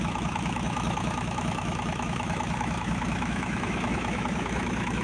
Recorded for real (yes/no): no